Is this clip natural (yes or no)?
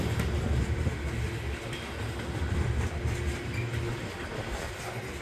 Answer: yes